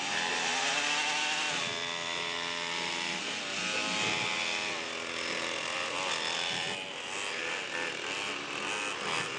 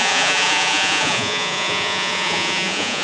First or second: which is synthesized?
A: second